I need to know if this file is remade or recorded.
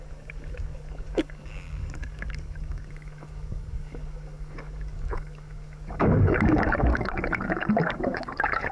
remade